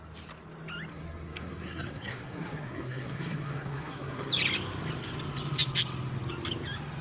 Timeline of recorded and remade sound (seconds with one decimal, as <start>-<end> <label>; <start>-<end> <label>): 0.0-0.9 recorded; 0.9-4.3 remade; 4.3-7.0 recorded